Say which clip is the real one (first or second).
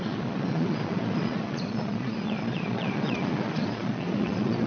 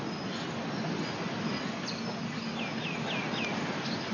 second